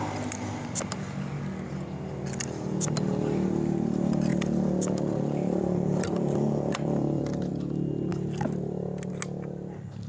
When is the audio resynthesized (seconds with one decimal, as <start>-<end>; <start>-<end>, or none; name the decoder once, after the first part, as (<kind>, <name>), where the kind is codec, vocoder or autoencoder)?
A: 4.3-7.5 (vocoder, BigVGAN v2)